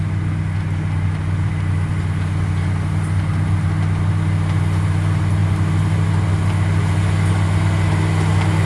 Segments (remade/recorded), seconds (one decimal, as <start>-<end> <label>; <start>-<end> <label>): 0.0-8.7 recorded